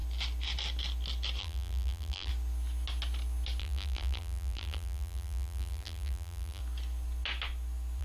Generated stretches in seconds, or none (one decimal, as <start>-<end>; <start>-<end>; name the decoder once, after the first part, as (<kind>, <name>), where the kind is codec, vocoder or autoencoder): 1.4-2.3 (vocoder, BigVGAN v2); 3.6-6.6